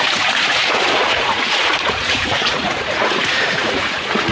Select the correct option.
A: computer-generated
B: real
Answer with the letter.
A